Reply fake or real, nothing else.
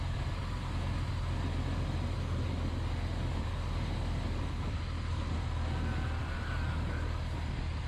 real